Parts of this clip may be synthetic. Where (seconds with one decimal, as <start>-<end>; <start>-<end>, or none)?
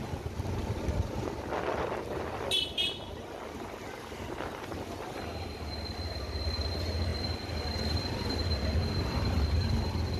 none